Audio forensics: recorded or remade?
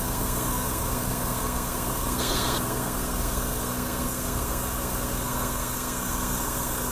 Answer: remade